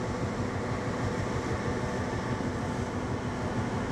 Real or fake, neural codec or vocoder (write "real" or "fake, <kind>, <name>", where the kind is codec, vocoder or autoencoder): real